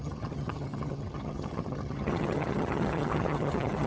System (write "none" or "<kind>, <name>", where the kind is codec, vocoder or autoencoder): vocoder, HiFi-GAN